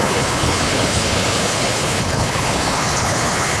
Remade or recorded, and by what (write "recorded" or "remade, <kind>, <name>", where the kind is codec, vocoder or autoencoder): remade, codec, HILCodec